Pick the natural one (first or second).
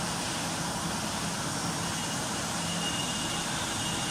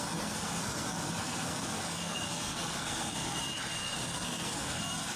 first